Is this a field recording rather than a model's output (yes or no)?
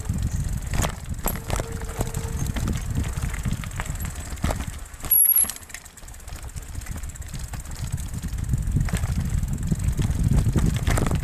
yes